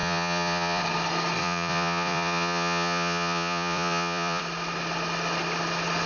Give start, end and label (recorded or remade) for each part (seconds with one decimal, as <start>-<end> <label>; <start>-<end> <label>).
0.0-0.8 remade; 0.8-1.4 recorded; 1.4-4.4 remade; 4.4-6.1 recorded